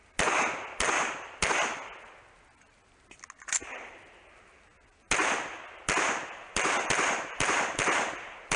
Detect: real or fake real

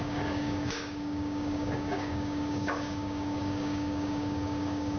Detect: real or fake fake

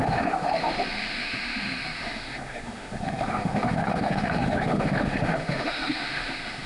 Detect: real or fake fake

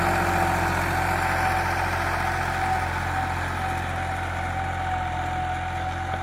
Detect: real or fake real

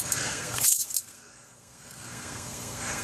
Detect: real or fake fake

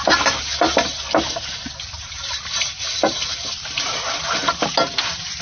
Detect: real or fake real